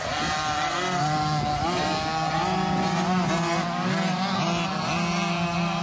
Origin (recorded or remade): recorded